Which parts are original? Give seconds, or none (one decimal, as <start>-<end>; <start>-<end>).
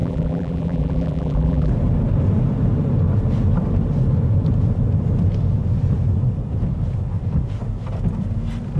1.7-8.8